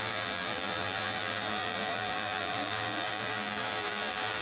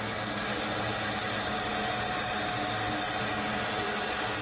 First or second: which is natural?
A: second